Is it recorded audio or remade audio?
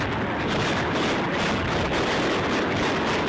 recorded